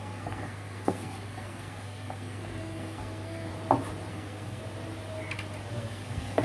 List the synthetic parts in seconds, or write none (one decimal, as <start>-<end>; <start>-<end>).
0.0-3.5; 4.1-4.6; 5.7-6.4